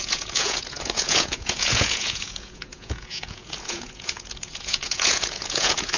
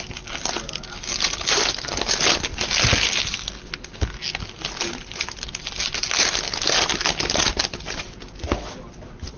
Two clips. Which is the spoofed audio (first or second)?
first